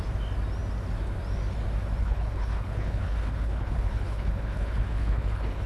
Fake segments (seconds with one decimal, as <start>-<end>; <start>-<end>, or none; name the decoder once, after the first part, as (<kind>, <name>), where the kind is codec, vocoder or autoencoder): 2.0-5.7 (codec, HILCodec)